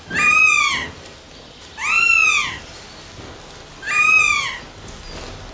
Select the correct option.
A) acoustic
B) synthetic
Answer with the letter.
A